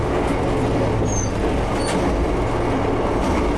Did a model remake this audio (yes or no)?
no